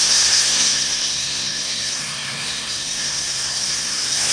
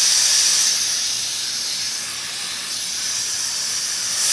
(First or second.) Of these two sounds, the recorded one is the second